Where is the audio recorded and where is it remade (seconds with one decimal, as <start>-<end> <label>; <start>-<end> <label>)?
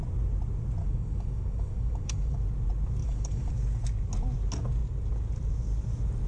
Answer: 0.0-0.8 recorded; 0.8-2.4 remade; 2.4-3.0 recorded; 3.0-3.5 remade; 3.5-6.3 recorded